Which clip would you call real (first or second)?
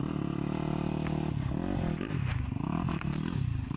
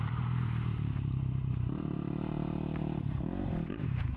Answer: first